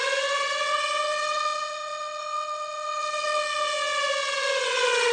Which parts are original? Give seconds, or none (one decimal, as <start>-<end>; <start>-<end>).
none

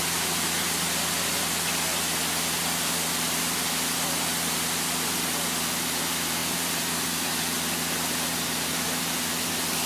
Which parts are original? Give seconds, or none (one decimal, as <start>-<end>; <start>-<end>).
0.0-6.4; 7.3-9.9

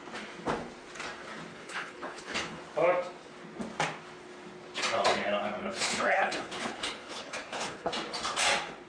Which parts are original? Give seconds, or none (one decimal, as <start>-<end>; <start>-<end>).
0.0-1.5; 2.6-5.6; 7.9-8.9

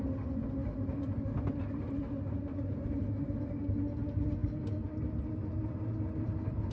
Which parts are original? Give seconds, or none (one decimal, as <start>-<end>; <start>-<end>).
0.0-0.6; 3.6-6.7

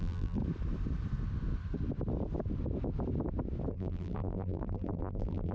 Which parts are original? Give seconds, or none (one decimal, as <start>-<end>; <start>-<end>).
0.4-3.7

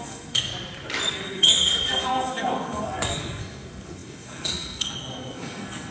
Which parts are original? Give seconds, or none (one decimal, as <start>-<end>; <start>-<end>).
0.5-1.1

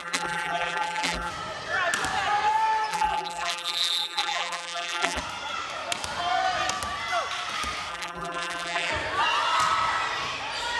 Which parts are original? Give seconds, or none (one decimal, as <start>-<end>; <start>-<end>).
1.3-2.9; 5.2-7.9; 8.9-10.8

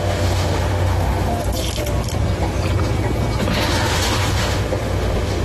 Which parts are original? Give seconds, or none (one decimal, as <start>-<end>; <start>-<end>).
1.3-3.5